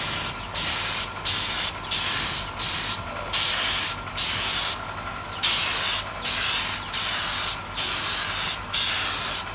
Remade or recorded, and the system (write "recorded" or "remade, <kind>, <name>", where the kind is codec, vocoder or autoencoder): recorded